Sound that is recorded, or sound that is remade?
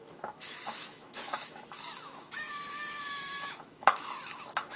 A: remade